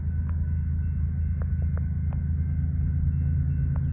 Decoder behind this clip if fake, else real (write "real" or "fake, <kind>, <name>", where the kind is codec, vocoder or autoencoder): real